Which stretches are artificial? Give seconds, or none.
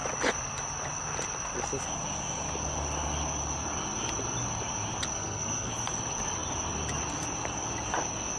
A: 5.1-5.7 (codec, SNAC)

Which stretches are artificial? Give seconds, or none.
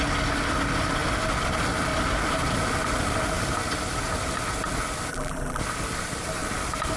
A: 5.1-5.6 (vocoder, BigVGAN v2)